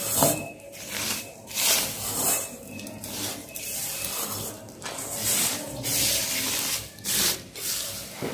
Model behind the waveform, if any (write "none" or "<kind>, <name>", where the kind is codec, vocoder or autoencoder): vocoder, BigVGAN v2